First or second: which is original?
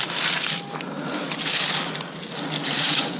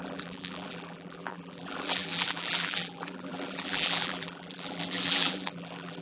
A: first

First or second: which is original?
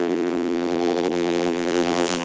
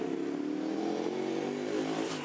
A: second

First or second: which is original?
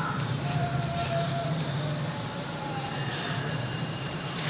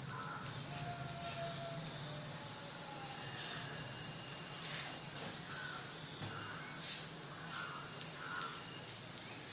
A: second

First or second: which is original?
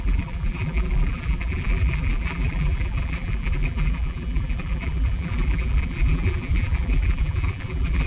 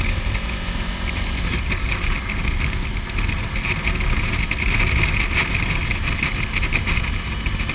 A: second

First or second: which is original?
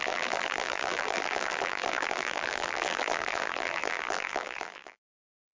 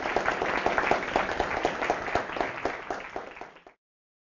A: second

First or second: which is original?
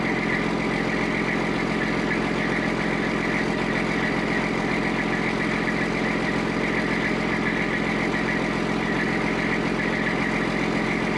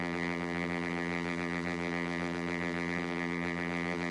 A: first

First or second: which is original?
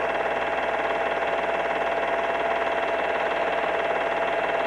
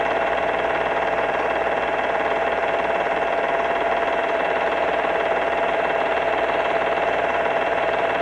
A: first